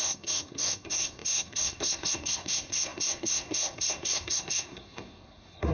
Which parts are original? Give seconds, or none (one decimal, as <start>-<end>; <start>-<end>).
none